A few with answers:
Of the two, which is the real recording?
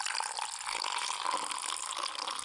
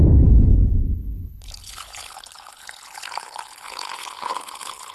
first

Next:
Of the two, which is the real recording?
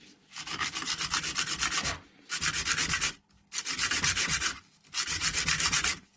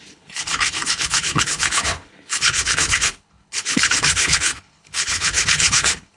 first